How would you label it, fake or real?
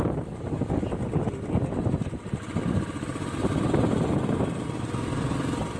real